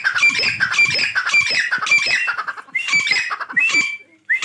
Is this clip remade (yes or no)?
no